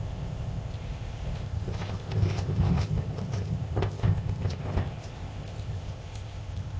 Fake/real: fake